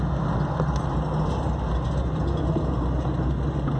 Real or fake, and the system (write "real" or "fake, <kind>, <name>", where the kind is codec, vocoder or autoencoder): real